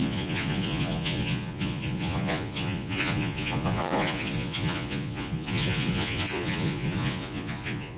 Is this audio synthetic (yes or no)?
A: yes